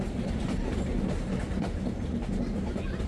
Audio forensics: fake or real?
real